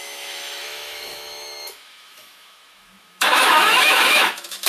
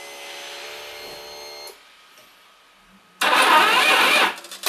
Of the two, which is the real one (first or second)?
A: second